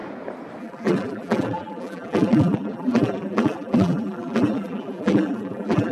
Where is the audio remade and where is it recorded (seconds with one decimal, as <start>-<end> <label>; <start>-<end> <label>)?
0.0-0.6 recorded; 0.6-5.9 remade